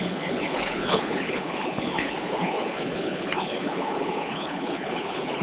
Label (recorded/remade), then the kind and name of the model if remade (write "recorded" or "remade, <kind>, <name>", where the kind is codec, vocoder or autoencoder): remade, codec, HILCodec